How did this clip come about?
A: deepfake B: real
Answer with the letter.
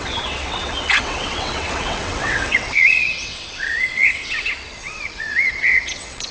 A